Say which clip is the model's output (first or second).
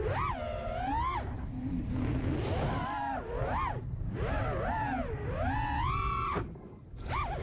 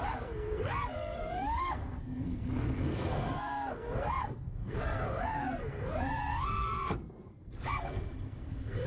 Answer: second